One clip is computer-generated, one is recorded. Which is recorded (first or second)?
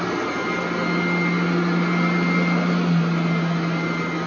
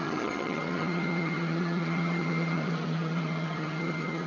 first